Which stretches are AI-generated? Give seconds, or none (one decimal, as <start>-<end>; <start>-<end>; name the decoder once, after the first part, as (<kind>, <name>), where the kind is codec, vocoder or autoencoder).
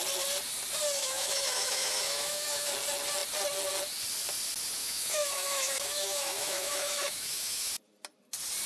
1.0-2.7 (autoencoder, DAC-VAE); 4.8-7.7